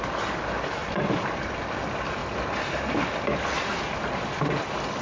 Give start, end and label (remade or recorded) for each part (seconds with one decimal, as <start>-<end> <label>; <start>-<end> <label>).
0.0-0.8 recorded; 0.8-1.4 remade; 1.4-5.0 recorded